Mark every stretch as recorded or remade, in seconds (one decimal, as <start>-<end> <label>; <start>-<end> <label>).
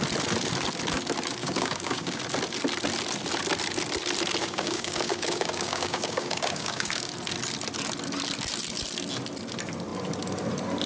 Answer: 0.0-1.4 recorded; 1.4-2.2 remade; 2.2-4.4 recorded; 4.4-7.1 remade; 7.1-10.9 recorded